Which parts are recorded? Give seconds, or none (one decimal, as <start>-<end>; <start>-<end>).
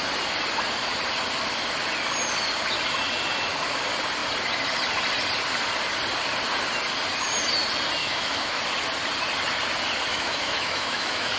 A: 0.0-8.0; 8.6-10.1